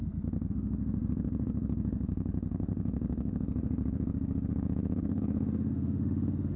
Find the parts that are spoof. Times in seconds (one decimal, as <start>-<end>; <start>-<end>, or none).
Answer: 0.5-6.6